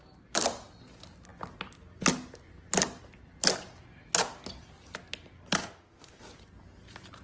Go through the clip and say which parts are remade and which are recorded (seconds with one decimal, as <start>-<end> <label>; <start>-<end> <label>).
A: 0.0-5.6 recorded; 5.6-6.2 remade; 6.2-7.2 recorded

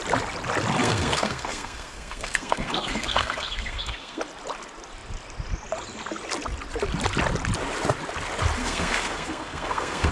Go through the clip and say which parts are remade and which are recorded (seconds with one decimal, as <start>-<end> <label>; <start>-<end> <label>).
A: 0.0-0.8 recorded; 0.8-4.2 remade; 4.2-8.6 recorded; 8.6-10.1 remade

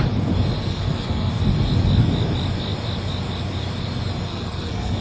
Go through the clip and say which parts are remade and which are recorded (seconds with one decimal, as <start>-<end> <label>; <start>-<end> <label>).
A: 0.0-0.6 recorded; 0.6-1.3 remade; 1.3-4.3 recorded; 4.3-5.0 remade

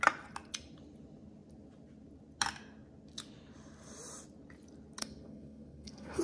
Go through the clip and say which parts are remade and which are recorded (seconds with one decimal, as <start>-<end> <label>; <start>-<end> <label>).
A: 0.0-5.0 recorded; 5.0-6.2 remade

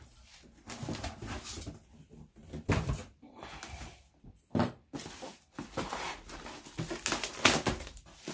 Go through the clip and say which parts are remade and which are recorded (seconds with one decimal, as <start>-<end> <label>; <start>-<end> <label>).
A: 0.0-2.4 recorded; 2.4-6.4 remade; 6.4-8.3 recorded